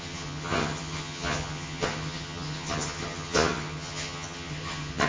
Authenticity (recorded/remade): remade